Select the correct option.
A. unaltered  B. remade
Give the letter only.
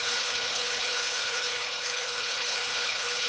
B